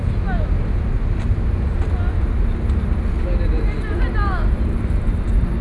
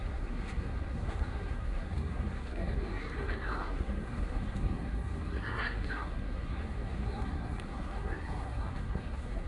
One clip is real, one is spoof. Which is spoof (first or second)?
second